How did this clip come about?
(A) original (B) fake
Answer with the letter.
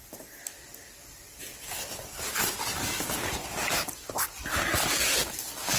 A